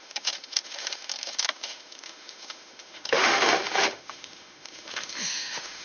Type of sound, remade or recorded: remade